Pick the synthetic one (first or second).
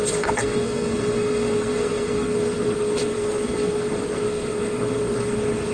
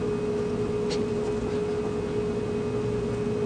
first